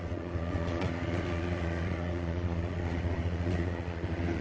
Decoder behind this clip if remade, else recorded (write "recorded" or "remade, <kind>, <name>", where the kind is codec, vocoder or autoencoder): remade, vocoder, Vocos